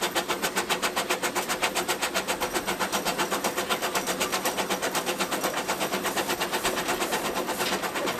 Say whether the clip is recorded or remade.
recorded